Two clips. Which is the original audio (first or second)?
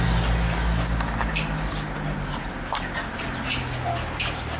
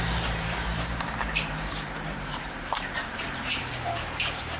first